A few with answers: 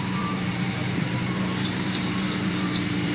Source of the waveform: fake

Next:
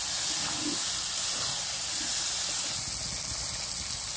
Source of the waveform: real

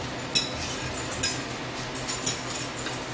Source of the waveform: real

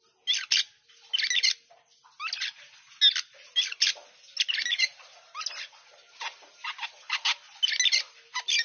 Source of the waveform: real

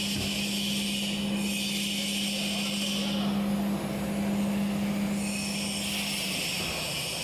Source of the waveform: real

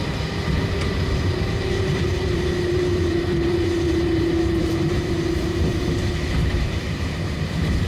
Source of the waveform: fake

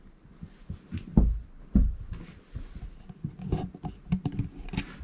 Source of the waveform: real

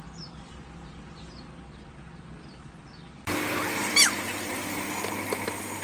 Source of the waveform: real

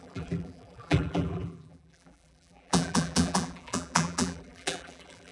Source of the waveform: fake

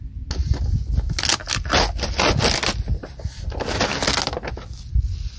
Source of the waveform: real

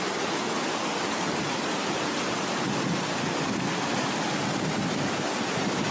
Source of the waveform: real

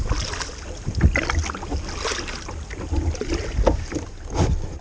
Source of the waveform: real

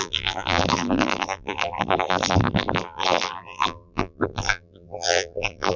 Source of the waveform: fake